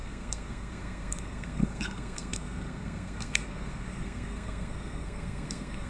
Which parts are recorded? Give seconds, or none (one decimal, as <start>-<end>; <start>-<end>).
none